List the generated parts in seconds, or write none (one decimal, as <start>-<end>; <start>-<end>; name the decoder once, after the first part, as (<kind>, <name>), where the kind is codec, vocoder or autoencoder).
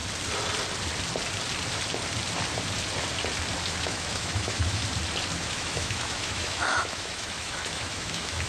3.8-4.8 (autoencoder, DAC-VAE); 5.4-8.5